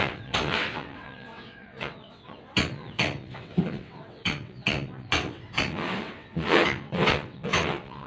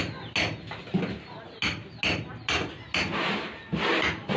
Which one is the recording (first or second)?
second